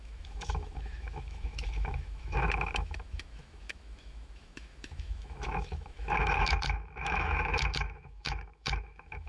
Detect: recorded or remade remade